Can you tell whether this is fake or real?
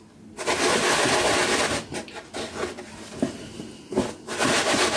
real